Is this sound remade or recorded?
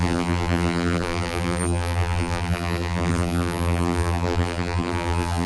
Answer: remade